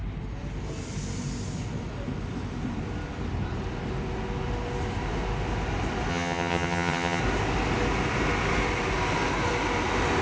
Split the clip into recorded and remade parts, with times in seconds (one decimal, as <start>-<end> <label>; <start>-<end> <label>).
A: 0.0-6.1 recorded; 6.1-7.2 remade; 7.2-10.2 recorded